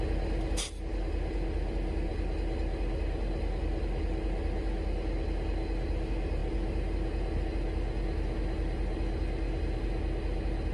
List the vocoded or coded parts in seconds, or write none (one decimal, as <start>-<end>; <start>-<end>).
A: none